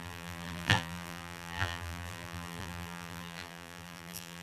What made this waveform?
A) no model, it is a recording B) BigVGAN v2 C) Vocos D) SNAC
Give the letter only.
B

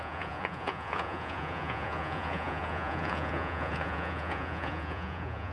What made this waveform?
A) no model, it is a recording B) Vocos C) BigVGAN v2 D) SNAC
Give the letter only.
B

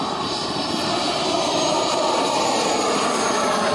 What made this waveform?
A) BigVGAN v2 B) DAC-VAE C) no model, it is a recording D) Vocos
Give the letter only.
A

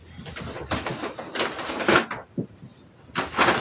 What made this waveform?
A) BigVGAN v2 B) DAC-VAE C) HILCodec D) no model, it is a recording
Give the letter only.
D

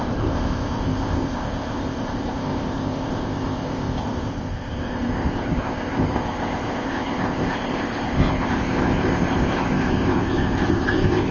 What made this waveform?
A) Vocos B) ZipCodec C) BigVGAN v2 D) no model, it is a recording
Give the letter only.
B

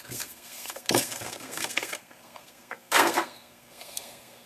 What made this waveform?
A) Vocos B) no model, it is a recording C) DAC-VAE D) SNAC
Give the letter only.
D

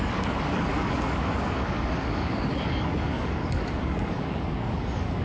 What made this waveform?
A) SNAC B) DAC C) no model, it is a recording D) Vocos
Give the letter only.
B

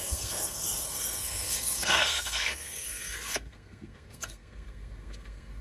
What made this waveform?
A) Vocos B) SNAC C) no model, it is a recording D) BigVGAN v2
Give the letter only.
B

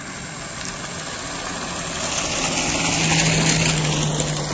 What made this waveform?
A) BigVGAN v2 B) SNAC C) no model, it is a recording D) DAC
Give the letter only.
C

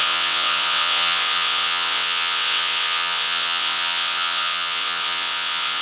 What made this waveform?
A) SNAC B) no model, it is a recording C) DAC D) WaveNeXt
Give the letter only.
D